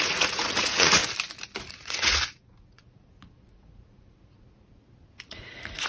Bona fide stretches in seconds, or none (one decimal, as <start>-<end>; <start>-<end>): 1.0-1.6